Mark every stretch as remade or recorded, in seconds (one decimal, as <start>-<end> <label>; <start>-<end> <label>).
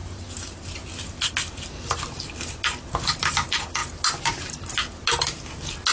0.0-5.9 recorded